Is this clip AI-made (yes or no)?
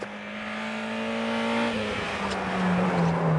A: no